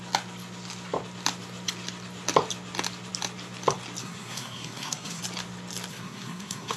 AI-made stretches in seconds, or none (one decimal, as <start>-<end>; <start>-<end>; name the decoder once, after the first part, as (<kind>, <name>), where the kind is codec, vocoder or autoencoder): 4.0-5.2 (codec, SNAC); 5.9-6.8